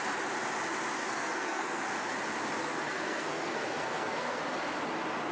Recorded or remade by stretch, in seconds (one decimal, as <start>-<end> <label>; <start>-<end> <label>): 0.0-1.0 recorded; 1.0-1.8 remade; 1.8-2.6 recorded; 2.6-4.4 remade; 4.4-5.3 recorded